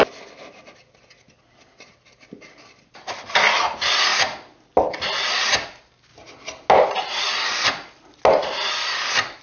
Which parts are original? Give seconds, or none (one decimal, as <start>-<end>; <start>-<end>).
0.0-9.4